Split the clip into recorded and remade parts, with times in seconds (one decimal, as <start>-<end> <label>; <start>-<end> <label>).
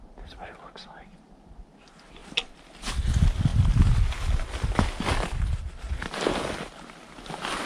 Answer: 0.0-7.7 recorded